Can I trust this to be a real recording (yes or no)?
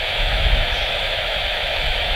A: no